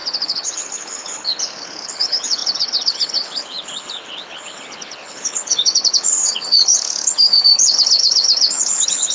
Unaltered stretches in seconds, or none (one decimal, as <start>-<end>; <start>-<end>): none